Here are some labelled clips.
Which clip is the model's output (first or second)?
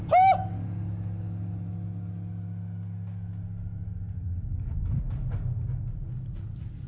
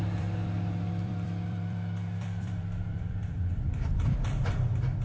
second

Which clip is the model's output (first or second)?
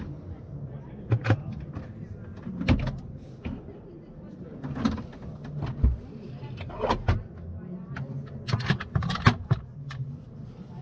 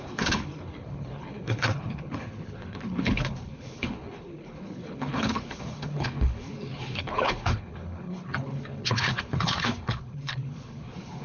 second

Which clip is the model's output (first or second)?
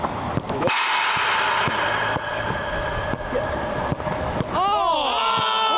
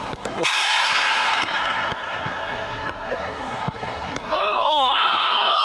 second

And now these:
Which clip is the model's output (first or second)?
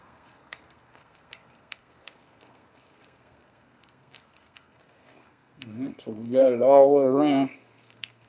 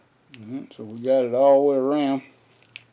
first